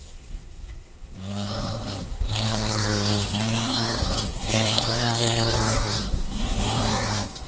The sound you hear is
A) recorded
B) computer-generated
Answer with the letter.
B